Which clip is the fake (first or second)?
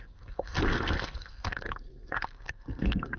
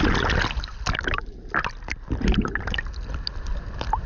first